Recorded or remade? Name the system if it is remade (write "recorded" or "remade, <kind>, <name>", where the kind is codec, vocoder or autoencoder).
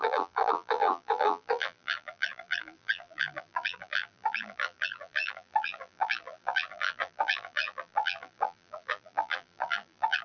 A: remade, vocoder, BigVGAN v2